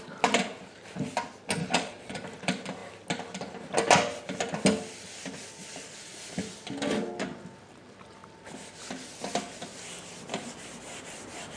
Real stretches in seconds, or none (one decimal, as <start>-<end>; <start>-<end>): 0.0-1.6; 2.2-11.6